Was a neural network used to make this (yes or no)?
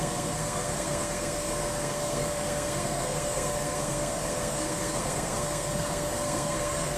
yes